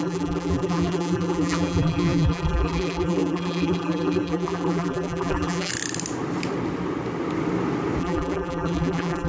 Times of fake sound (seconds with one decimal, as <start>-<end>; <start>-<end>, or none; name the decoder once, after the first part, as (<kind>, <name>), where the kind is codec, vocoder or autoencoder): 0.0-5.7 (vocoder, BigVGAN v2); 8.0-9.3